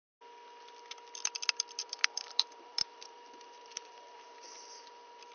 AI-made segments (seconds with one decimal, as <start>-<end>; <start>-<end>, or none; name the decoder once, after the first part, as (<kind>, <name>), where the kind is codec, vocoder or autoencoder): 1.8-5.3 (vocoder, BigVGAN v2)